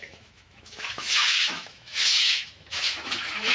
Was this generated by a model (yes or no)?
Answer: yes